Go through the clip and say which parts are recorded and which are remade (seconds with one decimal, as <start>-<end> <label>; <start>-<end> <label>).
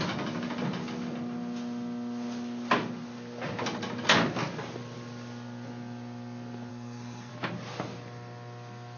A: 0.0-6.7 recorded; 6.7-7.3 remade; 7.3-9.0 recorded